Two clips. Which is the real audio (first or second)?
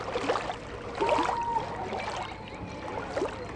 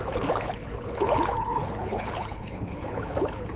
first